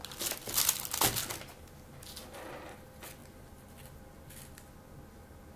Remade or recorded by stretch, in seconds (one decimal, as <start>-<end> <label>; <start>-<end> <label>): 0.0-5.6 recorded